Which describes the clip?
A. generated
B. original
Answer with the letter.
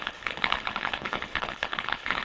A